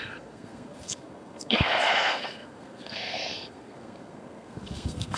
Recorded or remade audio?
remade